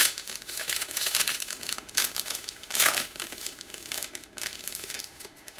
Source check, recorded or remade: remade